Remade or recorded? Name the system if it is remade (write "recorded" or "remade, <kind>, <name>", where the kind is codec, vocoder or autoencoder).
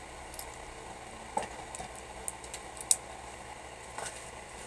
recorded